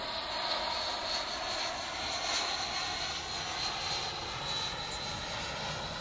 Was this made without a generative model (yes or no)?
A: yes